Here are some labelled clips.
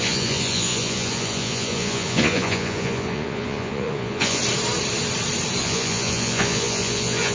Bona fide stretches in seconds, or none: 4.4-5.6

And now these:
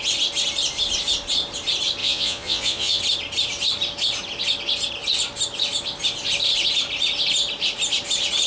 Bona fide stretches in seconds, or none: 0.0-2.0; 3.0-8.5

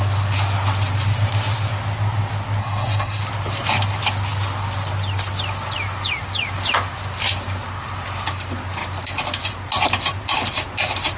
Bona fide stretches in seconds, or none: 0.0-2.6; 3.2-11.2

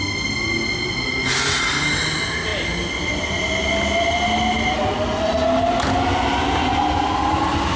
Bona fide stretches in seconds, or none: 0.0-7.8

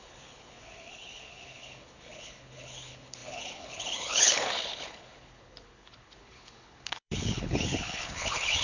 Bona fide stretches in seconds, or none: none